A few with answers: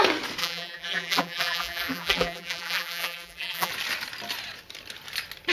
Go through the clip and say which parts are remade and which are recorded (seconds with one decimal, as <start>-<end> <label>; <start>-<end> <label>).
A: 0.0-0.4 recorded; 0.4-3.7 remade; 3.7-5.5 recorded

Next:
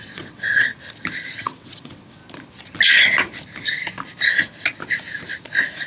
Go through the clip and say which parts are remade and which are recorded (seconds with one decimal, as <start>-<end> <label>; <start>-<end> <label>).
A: 0.0-0.7 remade; 0.7-1.4 recorded; 1.4-2.2 remade; 2.2-5.9 recorded

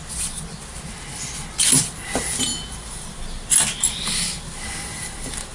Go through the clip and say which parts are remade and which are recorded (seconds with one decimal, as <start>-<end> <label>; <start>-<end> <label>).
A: 0.0-5.5 recorded